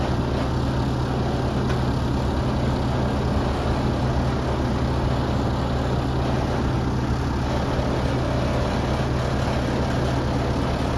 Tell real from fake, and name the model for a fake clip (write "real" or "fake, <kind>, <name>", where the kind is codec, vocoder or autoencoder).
real